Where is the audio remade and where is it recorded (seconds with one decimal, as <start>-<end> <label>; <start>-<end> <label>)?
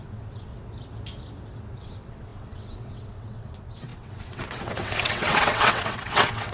0.0-0.5 remade; 0.5-1.7 recorded; 1.7-6.5 remade